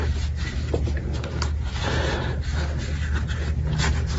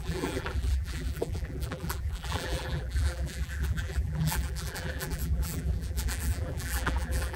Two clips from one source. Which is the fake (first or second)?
second